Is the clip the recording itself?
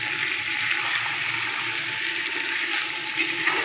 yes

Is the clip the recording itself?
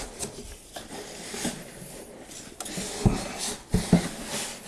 yes